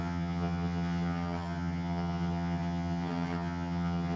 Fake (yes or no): yes